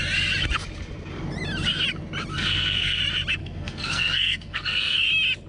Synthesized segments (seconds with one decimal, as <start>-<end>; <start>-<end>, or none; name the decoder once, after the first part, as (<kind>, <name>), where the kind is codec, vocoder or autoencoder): 2.3-3.0 (codec, SNAC); 3.4-5.1